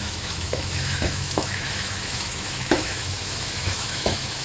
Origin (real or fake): fake